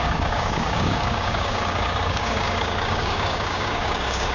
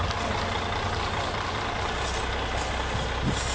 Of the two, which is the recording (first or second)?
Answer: second